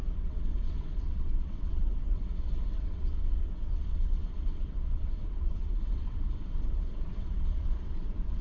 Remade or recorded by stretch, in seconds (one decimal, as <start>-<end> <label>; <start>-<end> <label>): 0.0-8.4 remade